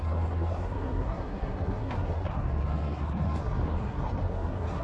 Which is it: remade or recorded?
remade